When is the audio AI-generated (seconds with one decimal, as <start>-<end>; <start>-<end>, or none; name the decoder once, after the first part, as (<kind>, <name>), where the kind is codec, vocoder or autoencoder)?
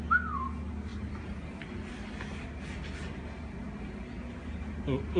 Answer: none